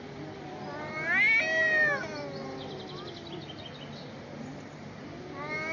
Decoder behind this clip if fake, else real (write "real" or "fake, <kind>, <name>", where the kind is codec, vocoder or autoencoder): real